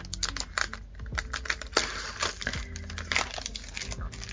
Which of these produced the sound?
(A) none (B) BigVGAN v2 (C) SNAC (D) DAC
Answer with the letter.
A